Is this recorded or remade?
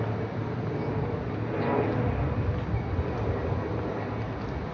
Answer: recorded